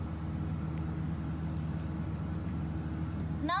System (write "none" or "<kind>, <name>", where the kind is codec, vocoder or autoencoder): none